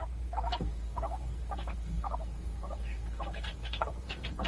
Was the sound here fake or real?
fake